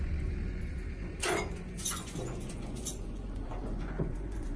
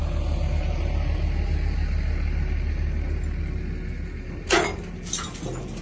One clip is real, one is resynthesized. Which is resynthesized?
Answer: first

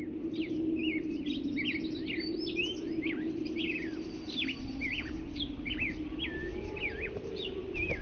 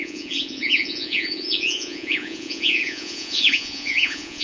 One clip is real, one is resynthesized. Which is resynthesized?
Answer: second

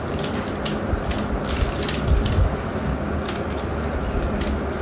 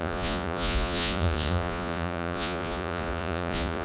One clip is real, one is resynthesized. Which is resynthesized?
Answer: second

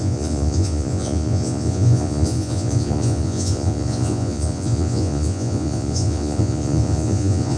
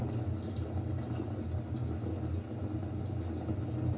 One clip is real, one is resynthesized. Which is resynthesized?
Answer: first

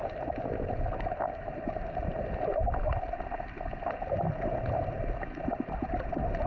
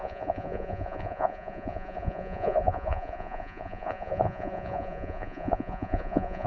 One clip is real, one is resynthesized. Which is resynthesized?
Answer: second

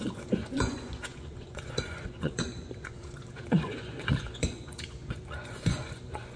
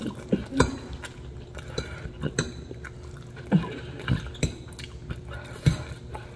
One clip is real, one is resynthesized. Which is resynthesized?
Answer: first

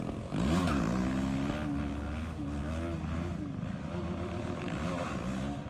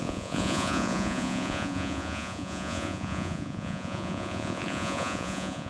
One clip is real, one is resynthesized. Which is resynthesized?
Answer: second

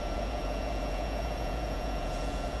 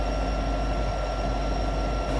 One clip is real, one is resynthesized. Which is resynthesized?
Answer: first